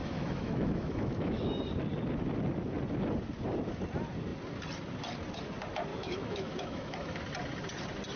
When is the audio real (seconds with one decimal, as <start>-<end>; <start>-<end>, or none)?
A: 1.6-5.9; 7.2-8.2

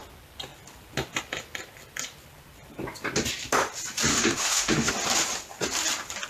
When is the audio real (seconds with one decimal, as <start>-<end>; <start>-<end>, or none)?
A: 0.0-4.1; 4.9-6.3

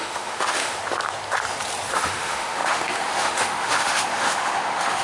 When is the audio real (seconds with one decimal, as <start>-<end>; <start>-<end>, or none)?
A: 0.8-1.9